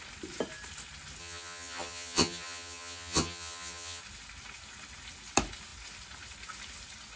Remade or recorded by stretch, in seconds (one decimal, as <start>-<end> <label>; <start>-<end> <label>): 0.0-1.2 recorded; 1.2-4.0 remade; 4.0-7.2 recorded